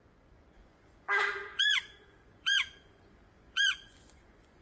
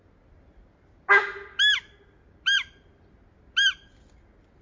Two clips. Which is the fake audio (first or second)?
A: first